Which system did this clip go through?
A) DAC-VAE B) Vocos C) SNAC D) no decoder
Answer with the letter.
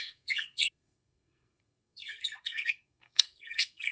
C